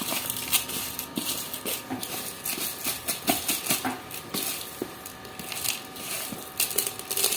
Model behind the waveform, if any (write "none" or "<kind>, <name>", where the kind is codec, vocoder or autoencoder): none